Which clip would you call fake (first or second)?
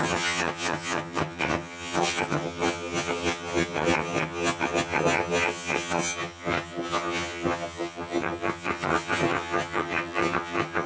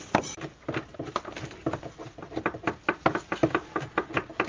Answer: first